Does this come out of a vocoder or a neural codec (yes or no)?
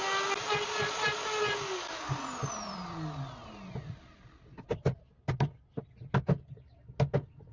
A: no